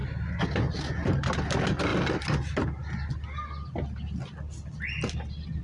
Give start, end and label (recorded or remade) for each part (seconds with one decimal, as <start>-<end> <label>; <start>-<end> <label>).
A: 0.0-5.6 recorded